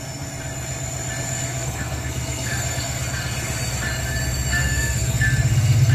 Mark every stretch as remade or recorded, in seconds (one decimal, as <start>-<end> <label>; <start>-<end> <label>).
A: 0.0-1.5 recorded; 1.5-3.0 remade; 3.0-4.5 recorded; 4.5-5.9 remade